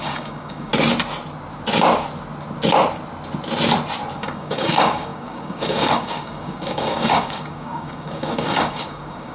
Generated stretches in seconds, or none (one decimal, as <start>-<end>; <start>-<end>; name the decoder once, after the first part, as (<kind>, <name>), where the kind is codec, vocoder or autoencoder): 0.0-0.7 (codec, DAC); 4.2-9.3